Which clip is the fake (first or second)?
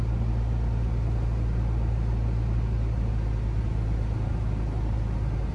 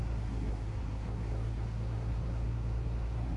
second